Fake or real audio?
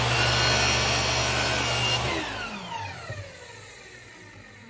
real